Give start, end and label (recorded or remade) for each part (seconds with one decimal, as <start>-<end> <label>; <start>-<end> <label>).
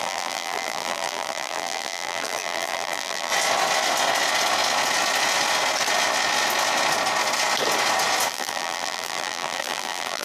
0.0-3.3 remade; 3.3-8.3 recorded; 8.3-10.2 remade